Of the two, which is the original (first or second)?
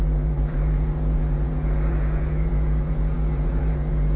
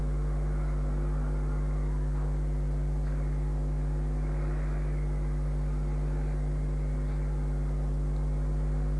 second